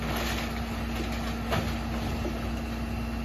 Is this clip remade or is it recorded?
recorded